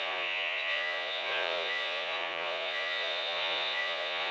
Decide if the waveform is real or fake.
fake